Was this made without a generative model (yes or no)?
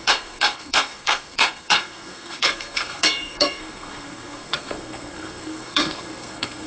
no